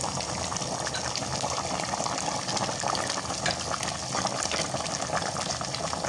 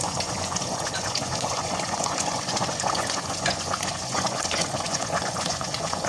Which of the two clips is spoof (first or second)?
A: second